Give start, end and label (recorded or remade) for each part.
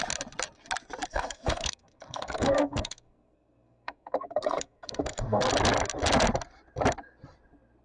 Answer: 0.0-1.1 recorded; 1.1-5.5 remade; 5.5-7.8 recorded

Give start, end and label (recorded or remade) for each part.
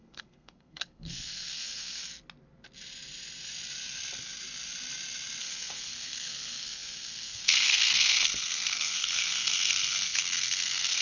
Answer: 0.0-2.1 remade; 2.1-5.4 recorded; 5.4-11.0 remade